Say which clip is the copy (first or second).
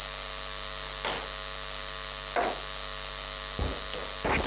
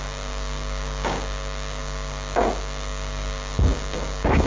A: second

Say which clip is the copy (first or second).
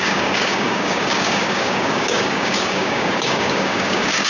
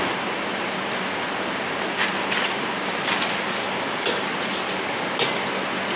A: first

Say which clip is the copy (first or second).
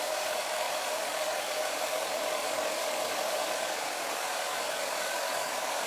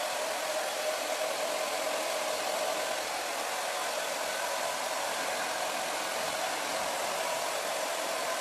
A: first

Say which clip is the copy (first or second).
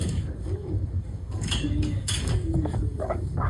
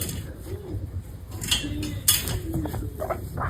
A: first